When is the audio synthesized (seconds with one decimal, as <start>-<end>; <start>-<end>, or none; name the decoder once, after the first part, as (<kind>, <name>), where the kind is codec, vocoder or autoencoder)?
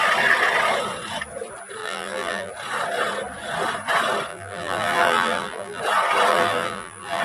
1.8-2.5 (vocoder, BigVGAN v2); 4.3-5.8; 6.3-7.2